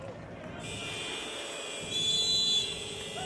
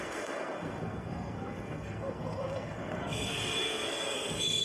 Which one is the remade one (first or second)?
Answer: second